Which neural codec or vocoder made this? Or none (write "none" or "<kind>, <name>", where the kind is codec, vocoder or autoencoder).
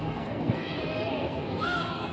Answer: codec, SNAC